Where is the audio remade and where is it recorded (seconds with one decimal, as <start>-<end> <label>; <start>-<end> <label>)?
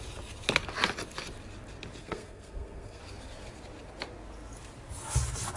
0.0-2.0 recorded; 2.0-3.0 remade; 3.0-5.6 recorded